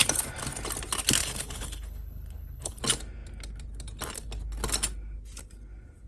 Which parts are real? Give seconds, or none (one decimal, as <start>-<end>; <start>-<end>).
0.0-1.2; 2.8-6.1